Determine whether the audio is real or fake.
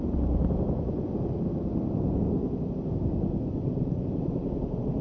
real